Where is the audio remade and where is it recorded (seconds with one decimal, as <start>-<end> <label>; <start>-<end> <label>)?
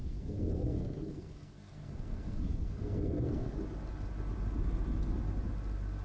0.0-3.6 remade; 3.6-6.0 recorded